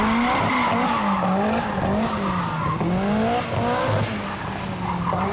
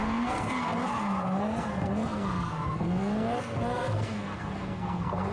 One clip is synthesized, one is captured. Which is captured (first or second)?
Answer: first